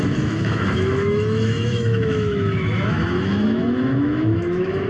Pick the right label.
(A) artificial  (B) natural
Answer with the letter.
A